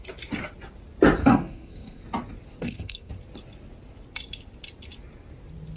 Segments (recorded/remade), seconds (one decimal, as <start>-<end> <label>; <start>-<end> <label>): 0.0-1.2 recorded; 1.2-2.0 remade; 2.0-2.6 recorded; 2.6-3.1 remade; 3.1-5.8 recorded

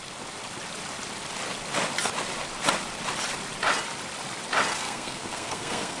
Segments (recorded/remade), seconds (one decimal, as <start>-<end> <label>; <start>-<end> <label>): 0.0-4.7 recorded; 4.7-6.0 remade

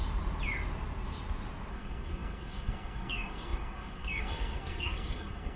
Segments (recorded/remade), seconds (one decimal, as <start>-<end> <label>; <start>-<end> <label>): 0.0-1.7 recorded; 1.7-5.6 remade

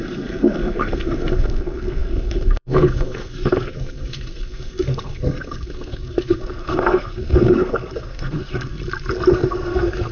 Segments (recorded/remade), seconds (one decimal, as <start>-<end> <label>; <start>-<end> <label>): 0.0-8.8 remade; 8.8-9.3 recorded; 9.3-10.1 remade